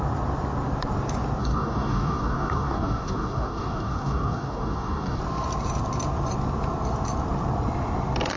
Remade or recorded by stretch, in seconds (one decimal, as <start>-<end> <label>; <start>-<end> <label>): 0.0-1.4 recorded; 1.4-5.2 remade; 5.2-8.4 recorded